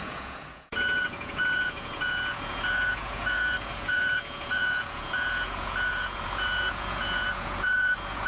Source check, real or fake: fake